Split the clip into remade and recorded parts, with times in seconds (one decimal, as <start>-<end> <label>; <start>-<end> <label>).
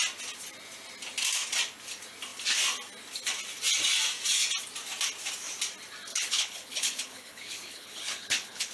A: 0.0-6.1 recorded; 6.1-8.7 remade